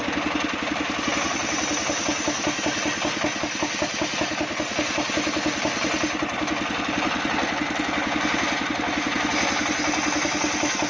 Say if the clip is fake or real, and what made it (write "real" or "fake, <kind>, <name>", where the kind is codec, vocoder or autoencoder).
real